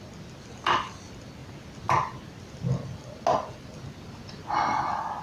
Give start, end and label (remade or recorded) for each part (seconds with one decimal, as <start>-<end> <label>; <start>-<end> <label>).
0.0-5.2 recorded